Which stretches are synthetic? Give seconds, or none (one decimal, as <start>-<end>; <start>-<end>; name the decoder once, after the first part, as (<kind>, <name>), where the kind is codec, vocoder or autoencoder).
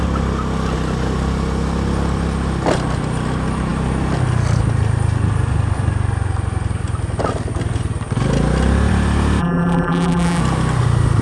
9.4-10.4 (vocoder, BigVGAN v2)